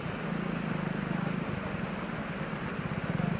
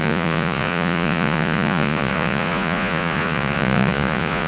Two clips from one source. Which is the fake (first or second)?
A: second